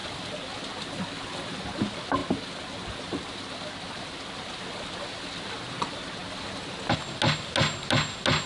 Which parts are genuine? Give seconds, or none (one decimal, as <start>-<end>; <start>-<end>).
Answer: 0.0-8.5